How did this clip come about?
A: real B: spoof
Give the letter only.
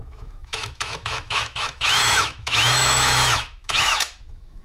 B